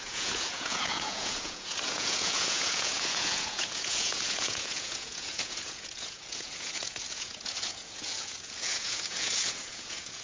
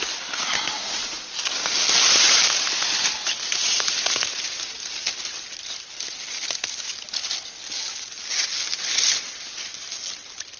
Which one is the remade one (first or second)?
first